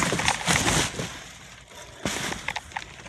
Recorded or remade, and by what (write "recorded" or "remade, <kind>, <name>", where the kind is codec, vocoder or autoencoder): recorded